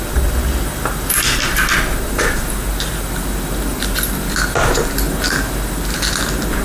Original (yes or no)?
yes